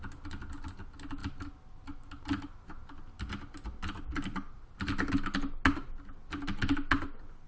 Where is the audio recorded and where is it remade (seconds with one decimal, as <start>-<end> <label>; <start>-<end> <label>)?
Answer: 0.0-7.5 recorded